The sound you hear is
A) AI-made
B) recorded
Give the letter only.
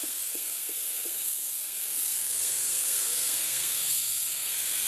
A